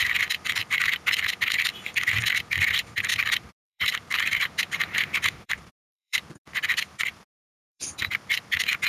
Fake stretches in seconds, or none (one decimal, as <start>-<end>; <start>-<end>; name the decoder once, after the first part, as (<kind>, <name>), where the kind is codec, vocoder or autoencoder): 3.1-8.1 (vocoder, BigVGAN v2)